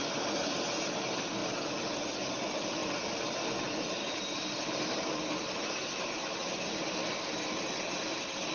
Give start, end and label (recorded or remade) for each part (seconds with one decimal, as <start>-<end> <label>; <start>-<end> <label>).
0.0-8.5 recorded